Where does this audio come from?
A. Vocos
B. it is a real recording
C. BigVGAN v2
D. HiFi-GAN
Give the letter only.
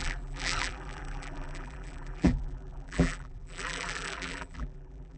C